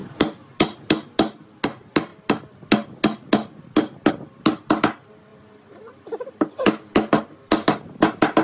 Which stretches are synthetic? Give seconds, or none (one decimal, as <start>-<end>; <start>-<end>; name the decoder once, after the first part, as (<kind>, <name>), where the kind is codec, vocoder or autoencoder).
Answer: 5.3-6.5 (vocoder, BigVGAN v2)